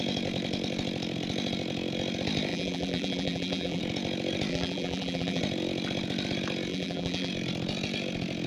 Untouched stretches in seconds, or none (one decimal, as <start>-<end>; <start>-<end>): 0.0-2.5; 3.8-4.5; 5.4-6.7; 7.3-8.5